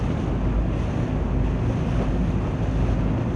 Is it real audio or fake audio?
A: real